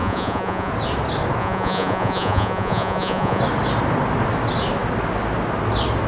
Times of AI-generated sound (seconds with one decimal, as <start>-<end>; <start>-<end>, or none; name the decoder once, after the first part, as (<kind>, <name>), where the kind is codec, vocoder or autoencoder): 0.0-0.7 (vocoder, Vocos); 1.4-3.4